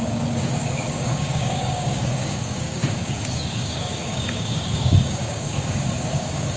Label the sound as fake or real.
fake